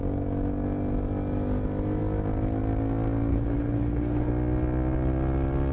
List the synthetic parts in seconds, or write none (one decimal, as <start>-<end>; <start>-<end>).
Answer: 3.3-4.3